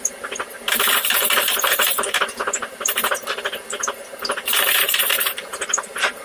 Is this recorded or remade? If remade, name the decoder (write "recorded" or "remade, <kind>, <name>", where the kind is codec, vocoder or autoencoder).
remade, vocoder, BigVGAN v2